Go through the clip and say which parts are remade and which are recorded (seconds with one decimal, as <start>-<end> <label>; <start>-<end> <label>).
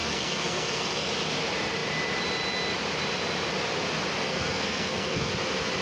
0.0-1.1 remade; 1.1-4.2 recorded; 4.2-5.3 remade; 5.3-5.8 recorded